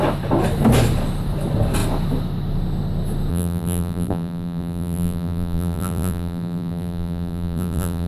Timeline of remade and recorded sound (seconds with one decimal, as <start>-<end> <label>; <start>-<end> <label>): 0.0-3.3 recorded; 3.3-8.1 remade